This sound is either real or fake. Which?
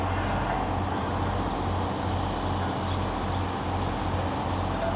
real